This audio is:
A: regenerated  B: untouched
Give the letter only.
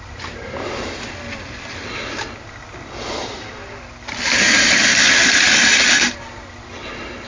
B